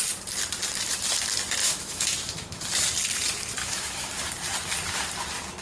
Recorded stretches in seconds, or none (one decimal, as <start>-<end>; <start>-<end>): 0.0-1.6; 2.6-3.6; 4.1-5.6